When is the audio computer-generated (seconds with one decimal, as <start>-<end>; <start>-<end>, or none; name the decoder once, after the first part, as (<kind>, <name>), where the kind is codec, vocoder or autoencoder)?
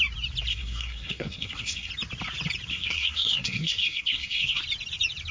0.5-1.9 (codec, SNAC); 2.7-4.6